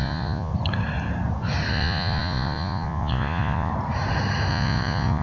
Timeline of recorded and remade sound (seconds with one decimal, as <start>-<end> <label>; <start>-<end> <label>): 0.0-0.5 remade; 0.5-1.7 recorded; 1.7-3.7 remade; 3.7-4.5 recorded; 4.5-5.2 remade